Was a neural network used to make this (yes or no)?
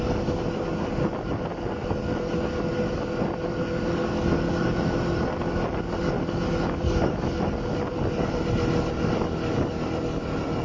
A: no